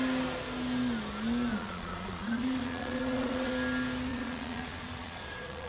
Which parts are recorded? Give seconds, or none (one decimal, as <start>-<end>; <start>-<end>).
0.0-1.5; 3.5-4.1